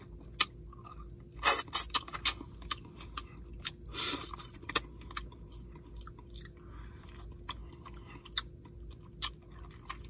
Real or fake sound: real